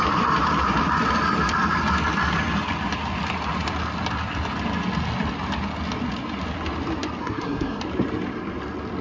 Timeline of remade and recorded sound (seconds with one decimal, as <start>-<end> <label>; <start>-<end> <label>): 0.0-7.2 recorded; 7.2-7.8 remade; 7.8-9.0 recorded